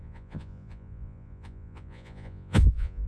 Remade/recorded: remade